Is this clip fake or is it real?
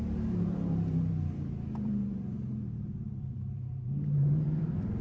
fake